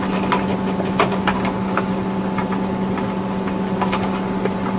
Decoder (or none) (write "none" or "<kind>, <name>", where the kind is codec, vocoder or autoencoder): vocoder, BigVGAN v2